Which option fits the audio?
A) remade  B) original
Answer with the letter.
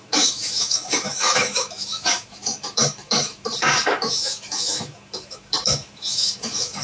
A